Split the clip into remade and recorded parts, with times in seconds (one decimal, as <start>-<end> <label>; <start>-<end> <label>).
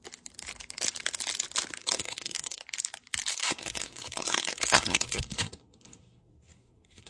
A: 0.0-1.8 recorded; 1.8-2.6 remade; 2.6-3.3 recorded; 3.3-7.1 remade